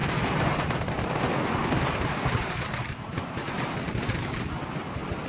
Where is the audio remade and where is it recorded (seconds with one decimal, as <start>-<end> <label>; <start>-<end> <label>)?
0.0-1.2 remade; 1.2-1.6 recorded; 1.6-4.8 remade; 4.8-5.3 recorded